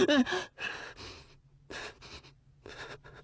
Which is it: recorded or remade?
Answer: recorded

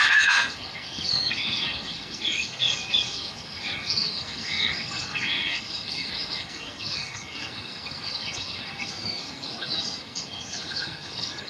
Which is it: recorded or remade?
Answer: remade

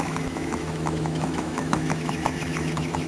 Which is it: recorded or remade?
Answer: remade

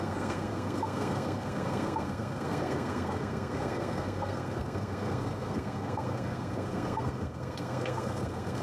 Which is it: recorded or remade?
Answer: remade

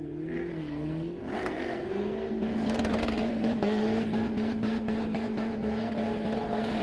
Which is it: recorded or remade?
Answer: remade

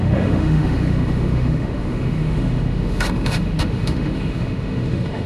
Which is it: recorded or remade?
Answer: remade